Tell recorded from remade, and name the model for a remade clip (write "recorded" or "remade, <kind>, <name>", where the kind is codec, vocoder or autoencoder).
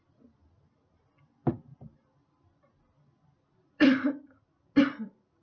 recorded